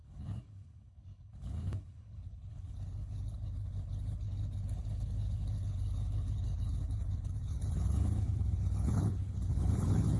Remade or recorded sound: remade